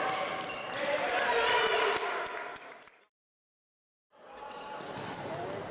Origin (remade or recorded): recorded